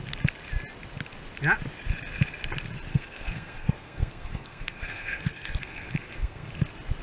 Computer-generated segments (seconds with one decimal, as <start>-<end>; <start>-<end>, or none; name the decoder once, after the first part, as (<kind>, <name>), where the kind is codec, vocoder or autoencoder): 2.9-6.5 (codec, SNAC)